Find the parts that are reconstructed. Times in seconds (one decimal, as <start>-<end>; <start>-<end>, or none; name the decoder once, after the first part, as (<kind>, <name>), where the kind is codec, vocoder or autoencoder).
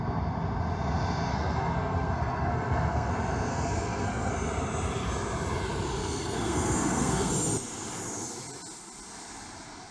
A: 1.3-3.1 (codec, SNAC); 3.5-4.3; 6.0-7.3